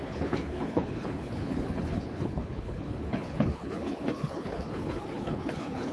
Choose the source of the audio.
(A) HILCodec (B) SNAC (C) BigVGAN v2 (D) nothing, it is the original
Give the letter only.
A